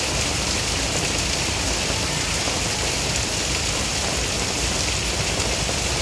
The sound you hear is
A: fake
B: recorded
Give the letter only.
A